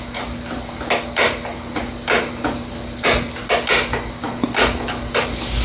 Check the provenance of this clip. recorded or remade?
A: recorded